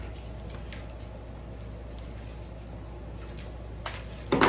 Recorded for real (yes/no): yes